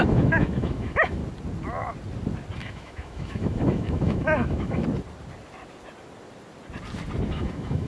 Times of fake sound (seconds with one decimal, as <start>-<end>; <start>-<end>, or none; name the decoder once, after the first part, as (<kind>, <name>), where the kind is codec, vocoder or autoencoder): 0.0-1.2 (autoencoder, DAC-VAE); 2.6-4.8; 7.3-7.9